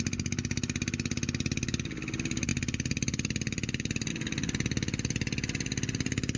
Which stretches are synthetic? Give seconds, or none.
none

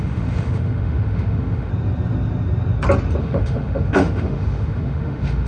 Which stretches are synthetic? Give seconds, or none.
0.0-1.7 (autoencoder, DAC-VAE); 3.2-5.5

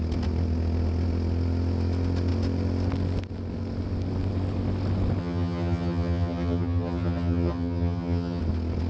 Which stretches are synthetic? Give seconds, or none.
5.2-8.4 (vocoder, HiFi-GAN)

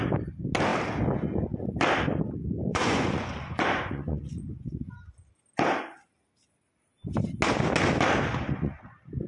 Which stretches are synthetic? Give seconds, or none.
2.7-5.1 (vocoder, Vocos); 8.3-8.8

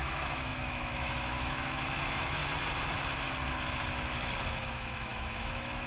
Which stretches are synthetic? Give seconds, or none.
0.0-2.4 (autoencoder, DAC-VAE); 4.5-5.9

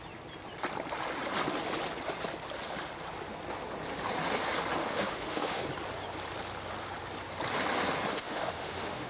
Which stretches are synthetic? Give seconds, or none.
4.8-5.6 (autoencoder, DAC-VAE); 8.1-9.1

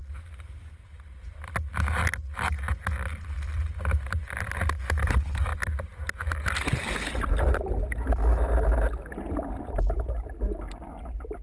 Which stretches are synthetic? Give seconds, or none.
none